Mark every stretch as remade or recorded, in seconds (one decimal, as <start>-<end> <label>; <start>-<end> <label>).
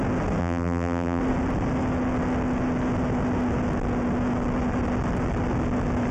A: 0.0-0.4 recorded; 0.4-1.2 remade; 1.2-6.1 recorded